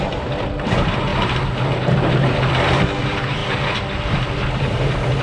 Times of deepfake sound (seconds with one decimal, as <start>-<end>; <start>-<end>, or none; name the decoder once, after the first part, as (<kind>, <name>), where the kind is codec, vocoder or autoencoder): 0.0-1.1 (vocoder, BigVGAN v2); 3.0-3.4; 4.4-5.2